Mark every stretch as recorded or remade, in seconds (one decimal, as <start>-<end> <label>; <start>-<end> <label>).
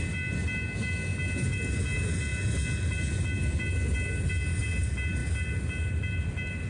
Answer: 0.0-6.7 recorded